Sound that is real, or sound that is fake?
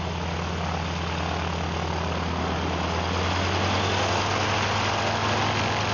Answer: real